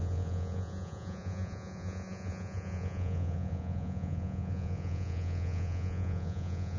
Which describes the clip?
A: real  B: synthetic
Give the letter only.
B